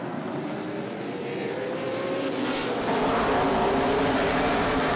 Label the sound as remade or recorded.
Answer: recorded